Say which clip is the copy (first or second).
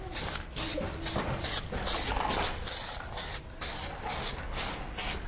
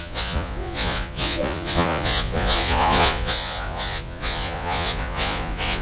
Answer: second